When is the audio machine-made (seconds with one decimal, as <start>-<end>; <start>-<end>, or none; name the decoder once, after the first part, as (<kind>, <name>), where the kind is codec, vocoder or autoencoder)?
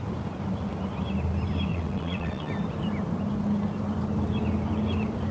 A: 1.7-2.5 (vocoder, WaveNeXt)